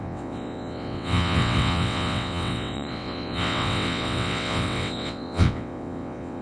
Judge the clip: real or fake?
fake